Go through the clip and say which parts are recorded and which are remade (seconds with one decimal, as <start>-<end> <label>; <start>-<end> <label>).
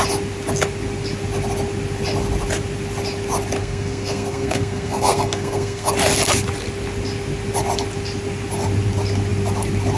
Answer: 0.0-3.6 recorded; 3.6-5.9 remade; 5.9-10.0 recorded